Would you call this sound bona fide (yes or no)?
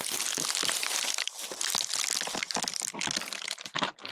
yes